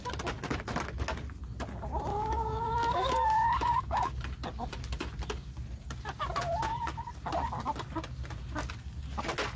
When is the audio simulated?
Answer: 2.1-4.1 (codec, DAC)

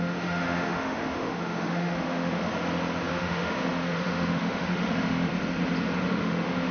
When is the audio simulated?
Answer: 0.0-2.5 (autoencoder, DAC-VAE); 3.1-5.3; 6.2-6.7

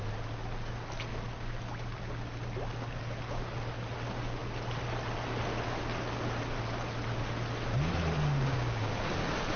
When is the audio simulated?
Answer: 8.5-9.1 (codec, DAC)

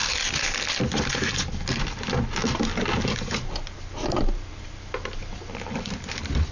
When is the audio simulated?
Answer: none

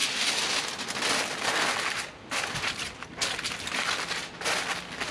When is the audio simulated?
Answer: none

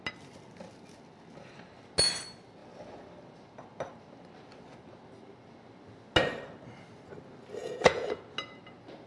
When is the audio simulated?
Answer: 7.6-8.2 (vocoder, Vocos)